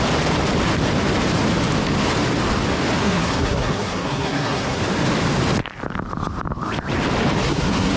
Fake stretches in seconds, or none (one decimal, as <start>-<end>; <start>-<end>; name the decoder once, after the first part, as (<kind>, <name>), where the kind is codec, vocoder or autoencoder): 3.0-4.8 (codec, SNAC); 7.4-8.0